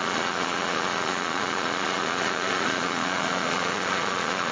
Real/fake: fake